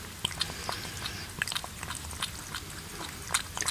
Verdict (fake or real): real